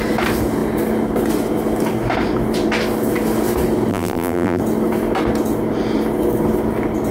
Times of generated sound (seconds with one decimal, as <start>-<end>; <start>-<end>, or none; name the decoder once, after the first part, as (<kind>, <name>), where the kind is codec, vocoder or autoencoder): 3.9-4.6 (vocoder, BigVGAN v2)